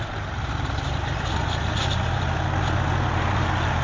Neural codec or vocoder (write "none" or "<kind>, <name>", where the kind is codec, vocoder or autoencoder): none